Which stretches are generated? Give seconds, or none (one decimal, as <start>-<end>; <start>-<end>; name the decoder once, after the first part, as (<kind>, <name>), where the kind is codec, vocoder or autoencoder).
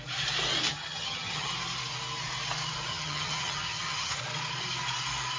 0.7-1.5 (vocoder, HiFi-GAN); 2.9-4.2